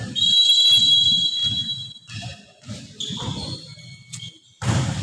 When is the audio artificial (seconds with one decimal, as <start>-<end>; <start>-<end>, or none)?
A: none